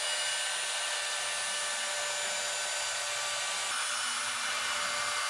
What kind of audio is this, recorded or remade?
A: recorded